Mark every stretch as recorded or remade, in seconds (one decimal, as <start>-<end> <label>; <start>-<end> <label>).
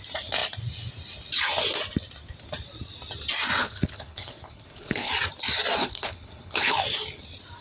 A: 0.0-3.6 recorded; 3.6-5.1 remade; 5.1-5.8 recorded; 5.8-6.7 remade; 6.7-7.6 recorded